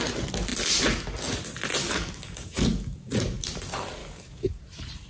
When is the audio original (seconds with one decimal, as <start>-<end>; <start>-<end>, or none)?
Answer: 0.0-1.8; 3.1-4.0; 4.6-5.1